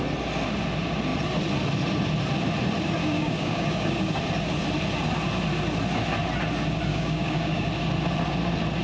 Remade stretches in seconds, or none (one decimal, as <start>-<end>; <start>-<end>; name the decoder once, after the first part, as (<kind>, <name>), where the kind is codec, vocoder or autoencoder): 3.0-4.2 (codec, DAC); 6.9-7.7